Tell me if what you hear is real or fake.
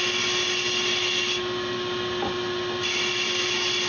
real